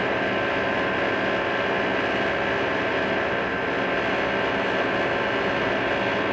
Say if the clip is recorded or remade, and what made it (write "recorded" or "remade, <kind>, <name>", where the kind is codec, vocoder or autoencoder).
recorded